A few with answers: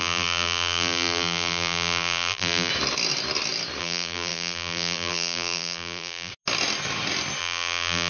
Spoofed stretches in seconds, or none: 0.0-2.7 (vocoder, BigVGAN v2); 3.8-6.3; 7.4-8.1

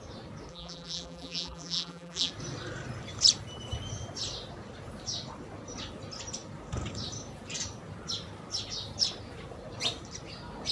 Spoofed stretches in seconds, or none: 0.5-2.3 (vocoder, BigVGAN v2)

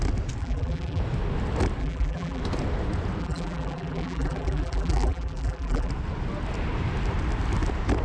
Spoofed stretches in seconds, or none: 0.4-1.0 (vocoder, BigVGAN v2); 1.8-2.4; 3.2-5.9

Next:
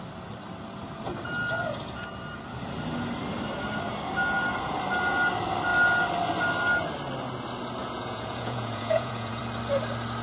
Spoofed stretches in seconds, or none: 7.8-9.4 (vocoder, Vocos)